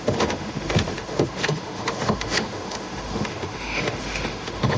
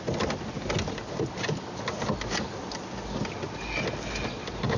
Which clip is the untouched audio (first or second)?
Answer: second